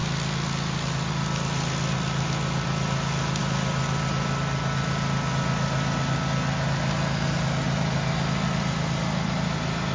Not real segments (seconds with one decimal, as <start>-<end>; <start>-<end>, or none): none